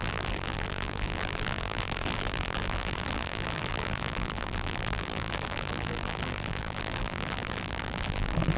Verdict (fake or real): fake